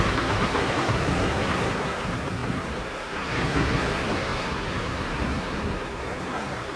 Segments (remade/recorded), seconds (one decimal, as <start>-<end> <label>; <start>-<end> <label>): 0.0-6.8 remade

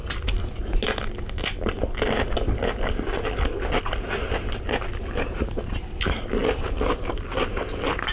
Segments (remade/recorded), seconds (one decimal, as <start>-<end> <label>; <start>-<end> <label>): 0.0-8.1 recorded